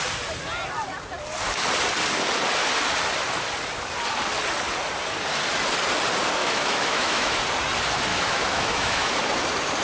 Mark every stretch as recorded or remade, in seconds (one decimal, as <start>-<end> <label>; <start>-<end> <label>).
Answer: 0.0-6.4 recorded; 6.4-7.4 remade; 7.4-8.1 recorded; 8.1-9.1 remade; 9.1-9.8 recorded